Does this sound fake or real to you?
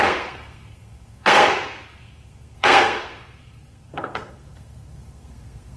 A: fake